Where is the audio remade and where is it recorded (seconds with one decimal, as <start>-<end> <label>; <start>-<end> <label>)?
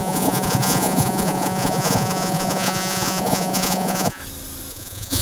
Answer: 0.0-4.2 remade; 4.2-4.7 recorded; 4.7-5.2 remade